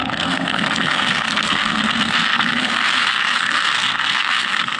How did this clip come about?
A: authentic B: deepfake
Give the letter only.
B